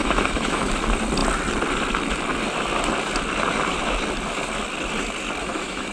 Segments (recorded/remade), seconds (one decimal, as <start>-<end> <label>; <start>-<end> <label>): 0.0-0.7 remade; 0.7-5.4 recorded; 5.4-5.9 remade